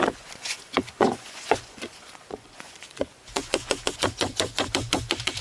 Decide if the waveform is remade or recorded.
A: remade